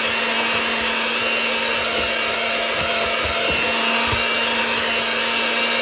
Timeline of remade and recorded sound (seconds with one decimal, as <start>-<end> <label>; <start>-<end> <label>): 0.0-5.8 recorded